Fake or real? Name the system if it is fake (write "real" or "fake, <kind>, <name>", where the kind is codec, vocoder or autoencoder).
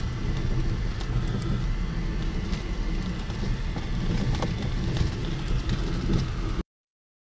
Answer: real